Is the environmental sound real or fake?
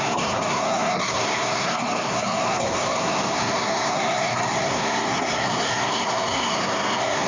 fake